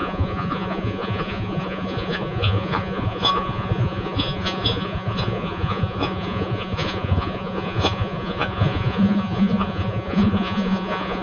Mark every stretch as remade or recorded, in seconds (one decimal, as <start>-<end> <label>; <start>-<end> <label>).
0.0-11.2 remade